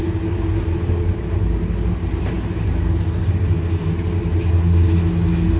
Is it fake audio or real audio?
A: real